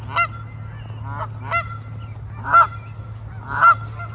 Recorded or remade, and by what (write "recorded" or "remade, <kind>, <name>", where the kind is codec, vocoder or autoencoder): recorded